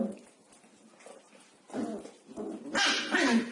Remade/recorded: recorded